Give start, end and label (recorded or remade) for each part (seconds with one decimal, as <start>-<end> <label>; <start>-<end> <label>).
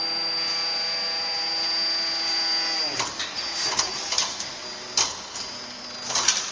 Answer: 0.0-6.5 recorded